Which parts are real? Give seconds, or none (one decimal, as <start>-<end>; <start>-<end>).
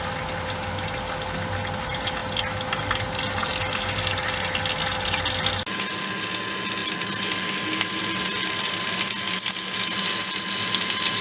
0.0-11.2